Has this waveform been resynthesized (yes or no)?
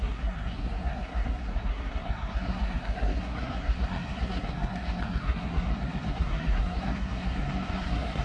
yes